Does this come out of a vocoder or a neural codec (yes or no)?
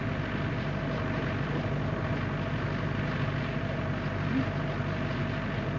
no